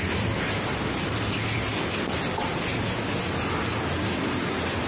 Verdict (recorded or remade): recorded